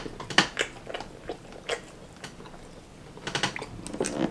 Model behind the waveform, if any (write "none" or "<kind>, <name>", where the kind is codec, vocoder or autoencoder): none